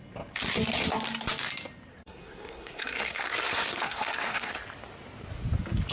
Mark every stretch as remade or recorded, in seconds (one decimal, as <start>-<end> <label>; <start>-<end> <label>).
0.0-1.9 recorded; 1.9-4.5 remade; 4.5-5.9 recorded